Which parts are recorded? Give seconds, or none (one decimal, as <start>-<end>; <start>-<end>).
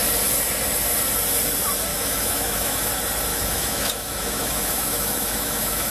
0.0-1.9; 2.9-3.3